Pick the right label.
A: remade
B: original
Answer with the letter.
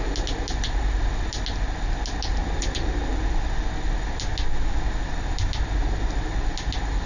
B